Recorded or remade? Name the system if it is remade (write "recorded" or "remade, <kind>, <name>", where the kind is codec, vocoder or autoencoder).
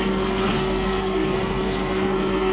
remade, codec, SNAC